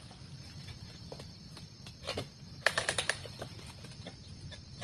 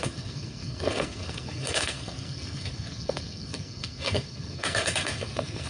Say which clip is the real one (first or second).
first